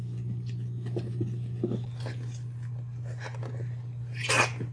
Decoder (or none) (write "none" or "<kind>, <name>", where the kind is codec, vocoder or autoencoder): none